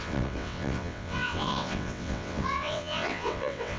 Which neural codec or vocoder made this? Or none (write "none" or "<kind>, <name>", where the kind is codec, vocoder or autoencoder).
vocoder, WaveNeXt